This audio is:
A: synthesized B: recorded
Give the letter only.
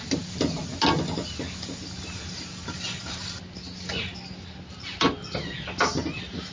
B